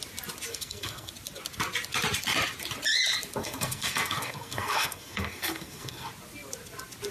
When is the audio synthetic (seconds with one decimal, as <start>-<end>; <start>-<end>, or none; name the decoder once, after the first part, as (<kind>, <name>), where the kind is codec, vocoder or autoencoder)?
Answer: 0.5-1.1 (codec, SNAC); 3.4-6.1